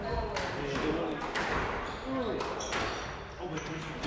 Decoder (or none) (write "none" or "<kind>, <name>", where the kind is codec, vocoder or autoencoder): none